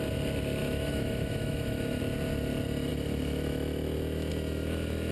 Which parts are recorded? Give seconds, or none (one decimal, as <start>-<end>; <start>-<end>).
0.0-0.6; 2.0-5.1